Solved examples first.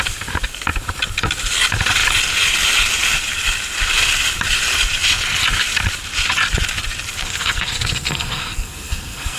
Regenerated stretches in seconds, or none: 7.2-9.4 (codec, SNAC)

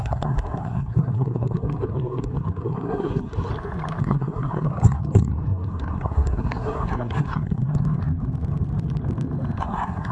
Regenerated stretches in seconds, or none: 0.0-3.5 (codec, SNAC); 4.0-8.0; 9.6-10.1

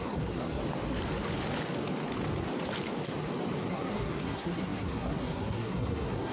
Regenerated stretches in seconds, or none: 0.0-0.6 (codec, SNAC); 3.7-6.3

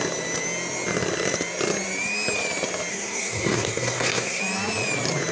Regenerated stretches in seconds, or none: 2.9-4.4 (codec, SNAC)

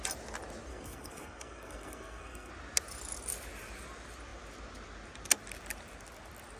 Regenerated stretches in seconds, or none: 0.7-2.5 (codec, SNAC)